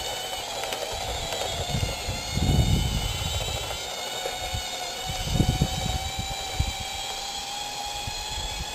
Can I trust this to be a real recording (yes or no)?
yes